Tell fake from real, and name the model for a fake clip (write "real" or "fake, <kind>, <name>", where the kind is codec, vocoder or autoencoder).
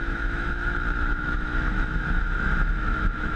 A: fake, autoencoder, DAC-VAE